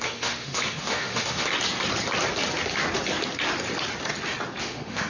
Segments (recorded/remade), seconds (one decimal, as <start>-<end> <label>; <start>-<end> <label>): 0.0-1.5 remade; 1.5-4.6 recorded; 4.6-5.1 remade